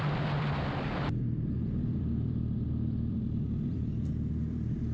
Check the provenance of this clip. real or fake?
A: fake